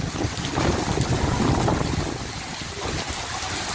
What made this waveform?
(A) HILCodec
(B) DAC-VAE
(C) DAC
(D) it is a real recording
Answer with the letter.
D